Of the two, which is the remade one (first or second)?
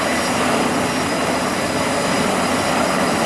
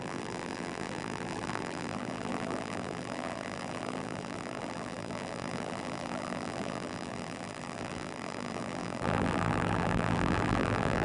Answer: second